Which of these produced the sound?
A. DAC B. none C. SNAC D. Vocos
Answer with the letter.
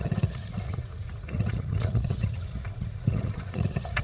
D